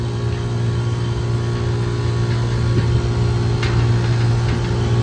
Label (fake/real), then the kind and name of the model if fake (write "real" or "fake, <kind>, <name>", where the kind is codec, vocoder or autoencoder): real